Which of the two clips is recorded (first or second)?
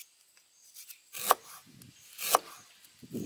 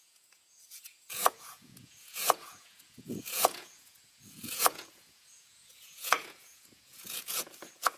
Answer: first